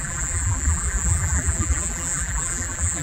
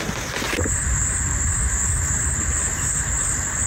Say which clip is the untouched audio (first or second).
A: second